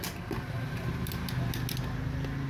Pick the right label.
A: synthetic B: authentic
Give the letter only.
B